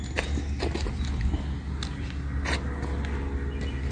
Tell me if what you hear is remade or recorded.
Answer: recorded